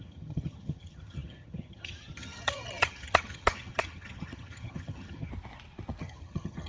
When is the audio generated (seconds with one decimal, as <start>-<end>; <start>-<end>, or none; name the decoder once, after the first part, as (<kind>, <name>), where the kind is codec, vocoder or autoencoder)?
0.0-5.3 (vocoder, HiFi-GAN); 6.0-6.7